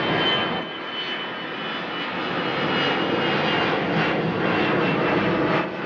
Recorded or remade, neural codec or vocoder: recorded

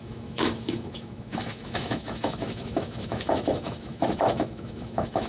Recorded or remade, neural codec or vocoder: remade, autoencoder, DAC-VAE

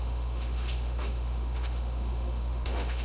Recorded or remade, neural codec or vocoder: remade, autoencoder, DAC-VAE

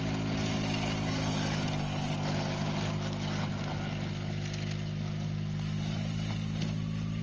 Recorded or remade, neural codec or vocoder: recorded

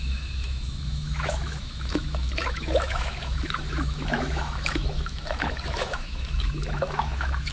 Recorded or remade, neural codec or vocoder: remade, autoencoder, DAC-VAE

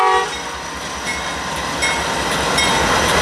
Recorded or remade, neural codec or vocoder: recorded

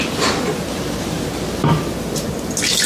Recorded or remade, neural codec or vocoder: recorded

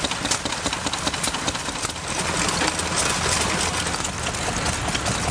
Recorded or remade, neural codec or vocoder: recorded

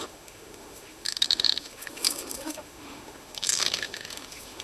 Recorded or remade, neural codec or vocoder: remade, autoencoder, DAC-VAE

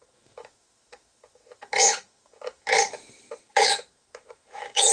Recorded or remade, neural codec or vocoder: remade, autoencoder, DAC-VAE